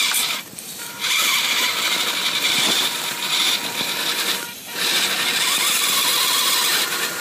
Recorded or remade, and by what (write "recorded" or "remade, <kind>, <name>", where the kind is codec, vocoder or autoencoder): remade, vocoder, BigVGAN v2